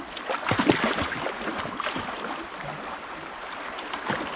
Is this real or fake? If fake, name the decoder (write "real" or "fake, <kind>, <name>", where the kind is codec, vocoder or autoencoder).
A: real